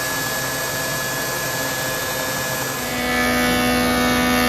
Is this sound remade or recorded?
recorded